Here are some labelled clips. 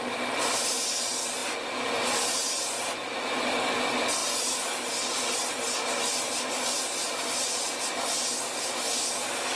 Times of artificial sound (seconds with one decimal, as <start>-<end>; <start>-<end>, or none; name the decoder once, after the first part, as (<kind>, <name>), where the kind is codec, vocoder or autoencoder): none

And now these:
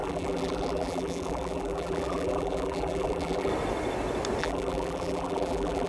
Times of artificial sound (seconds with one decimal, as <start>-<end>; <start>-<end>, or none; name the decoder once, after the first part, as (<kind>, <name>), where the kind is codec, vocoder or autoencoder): 0.0-3.5 (vocoder, BigVGAN v2); 4.4-5.9

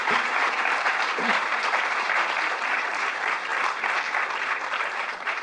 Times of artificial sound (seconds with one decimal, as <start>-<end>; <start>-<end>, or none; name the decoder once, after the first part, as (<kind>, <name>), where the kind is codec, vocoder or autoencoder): 0.0-3.5 (vocoder, BigVGAN v2); 4.9-5.4